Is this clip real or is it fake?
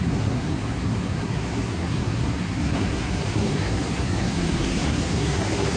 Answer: fake